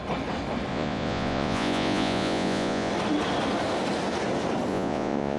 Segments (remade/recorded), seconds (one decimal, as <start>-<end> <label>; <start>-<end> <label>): 0.0-0.7 recorded; 0.7-2.9 remade; 2.9-4.7 recorded; 4.7-5.4 remade